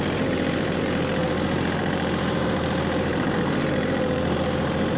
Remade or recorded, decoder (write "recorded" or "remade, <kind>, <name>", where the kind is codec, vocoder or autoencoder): remade, vocoder, BigVGAN v2